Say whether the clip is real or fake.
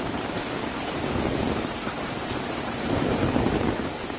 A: fake